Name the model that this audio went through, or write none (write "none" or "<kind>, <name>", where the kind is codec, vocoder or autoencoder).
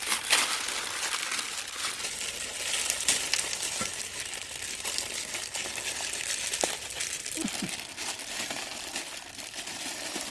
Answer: none